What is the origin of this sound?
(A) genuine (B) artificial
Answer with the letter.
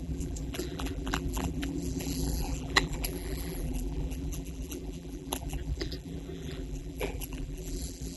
B